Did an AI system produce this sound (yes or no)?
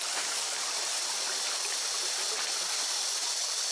no